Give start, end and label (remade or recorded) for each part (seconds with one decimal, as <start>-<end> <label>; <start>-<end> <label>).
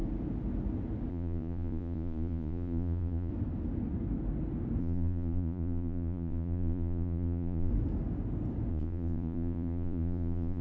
0.0-1.1 recorded; 1.1-3.3 remade; 3.3-4.8 recorded; 4.8-7.7 remade; 7.7-8.7 recorded; 8.7-10.6 remade